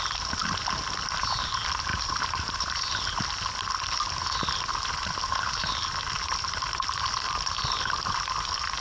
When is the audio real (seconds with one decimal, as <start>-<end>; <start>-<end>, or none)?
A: 0.0-1.9; 3.0-5.0; 5.6-8.8